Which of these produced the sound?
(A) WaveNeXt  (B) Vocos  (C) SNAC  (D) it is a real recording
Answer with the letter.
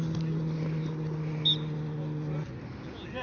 D